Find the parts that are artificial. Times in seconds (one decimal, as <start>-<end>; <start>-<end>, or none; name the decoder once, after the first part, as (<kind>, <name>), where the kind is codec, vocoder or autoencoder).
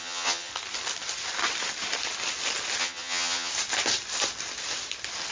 0.0-0.5 (vocoder, HiFi-GAN); 2.8-3.5